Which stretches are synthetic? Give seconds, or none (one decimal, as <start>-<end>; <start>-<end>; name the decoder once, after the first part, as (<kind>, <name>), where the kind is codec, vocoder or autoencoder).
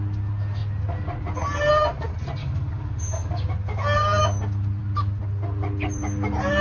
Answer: 2.4-3.4 (codec, DAC)